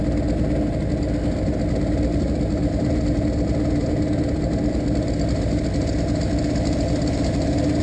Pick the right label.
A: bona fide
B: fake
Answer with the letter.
A